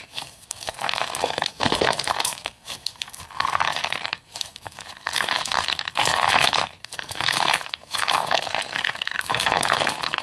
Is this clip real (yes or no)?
no